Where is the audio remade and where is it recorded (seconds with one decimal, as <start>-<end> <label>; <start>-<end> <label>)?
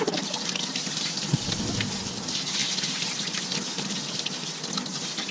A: 0.0-5.3 recorded